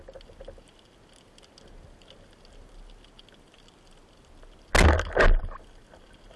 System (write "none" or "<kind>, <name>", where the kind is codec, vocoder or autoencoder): none